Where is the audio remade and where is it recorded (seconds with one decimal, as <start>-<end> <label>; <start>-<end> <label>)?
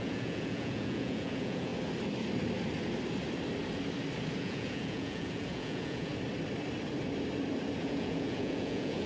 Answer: 0.0-1.7 remade; 1.7-4.4 recorded; 4.4-6.1 remade; 6.1-7.8 recorded; 7.8-9.1 remade